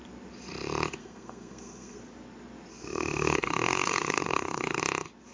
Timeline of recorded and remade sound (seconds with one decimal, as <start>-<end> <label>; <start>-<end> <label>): 0.0-1.0 recorded; 1.0-2.0 remade; 2.0-2.7 recorded; 2.7-4.8 remade; 4.8-5.3 recorded